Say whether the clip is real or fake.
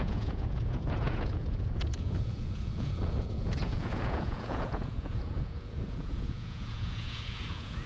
fake